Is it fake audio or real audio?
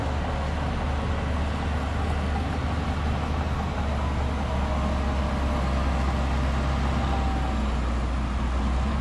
real